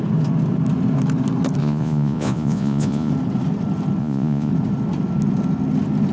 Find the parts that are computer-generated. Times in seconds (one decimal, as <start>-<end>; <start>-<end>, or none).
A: 1.6-3.1; 4.0-4.5